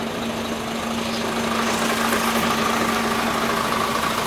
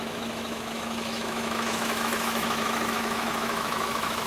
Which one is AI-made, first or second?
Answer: second